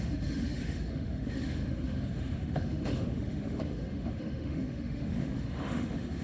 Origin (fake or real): fake